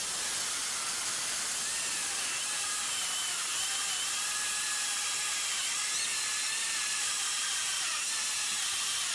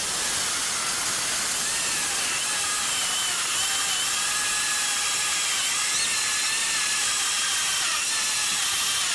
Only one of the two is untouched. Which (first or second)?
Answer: second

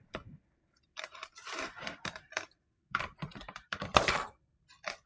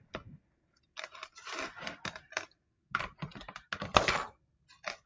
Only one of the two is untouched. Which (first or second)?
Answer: second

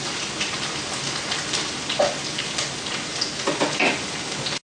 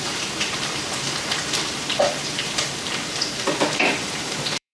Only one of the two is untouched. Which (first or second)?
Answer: first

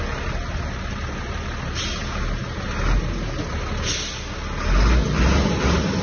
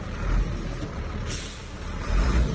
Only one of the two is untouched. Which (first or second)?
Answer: first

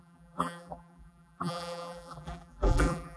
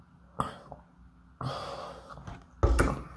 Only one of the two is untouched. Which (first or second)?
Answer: second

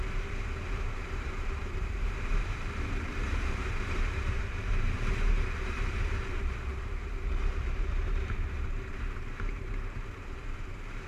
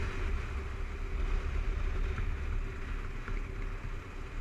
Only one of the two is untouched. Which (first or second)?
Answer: second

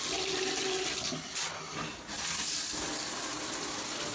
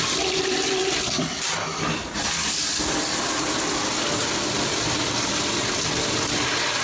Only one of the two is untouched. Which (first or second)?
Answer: first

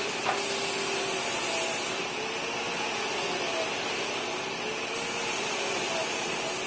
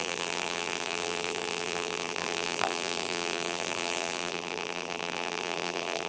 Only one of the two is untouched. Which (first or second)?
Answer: first